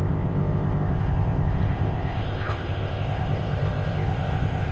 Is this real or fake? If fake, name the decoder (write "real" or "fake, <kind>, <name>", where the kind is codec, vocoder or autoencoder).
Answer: fake, codec, ZipCodec